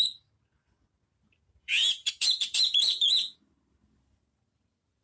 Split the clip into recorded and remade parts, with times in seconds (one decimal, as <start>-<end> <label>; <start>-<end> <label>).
0.0-1.6 recorded; 1.6-3.4 remade; 3.4-5.0 recorded